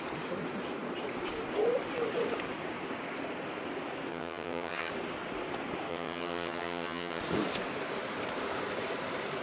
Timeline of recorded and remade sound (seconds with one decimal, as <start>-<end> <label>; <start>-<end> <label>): 0.0-4.1 recorded; 4.1-4.9 remade; 4.9-5.9 recorded; 5.9-7.2 remade; 7.2-9.4 recorded